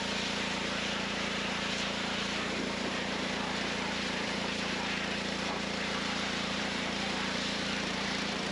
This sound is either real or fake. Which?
fake